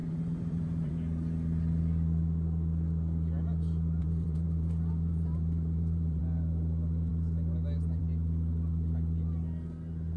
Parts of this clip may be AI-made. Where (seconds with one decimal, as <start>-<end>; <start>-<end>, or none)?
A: 0.0-0.9; 4.0-6.2